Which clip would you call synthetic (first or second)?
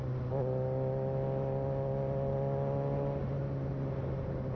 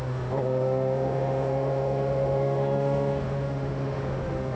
second